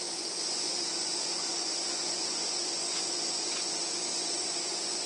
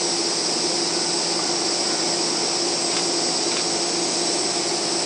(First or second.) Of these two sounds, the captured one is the second